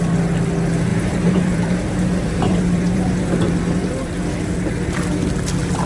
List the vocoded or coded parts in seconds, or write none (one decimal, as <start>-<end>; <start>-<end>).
0.9-3.9